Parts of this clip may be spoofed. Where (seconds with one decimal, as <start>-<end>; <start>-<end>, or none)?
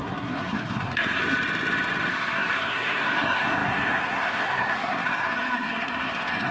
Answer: 0.0-1.2; 2.1-6.5